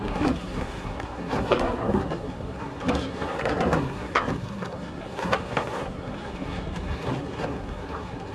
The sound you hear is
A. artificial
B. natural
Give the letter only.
A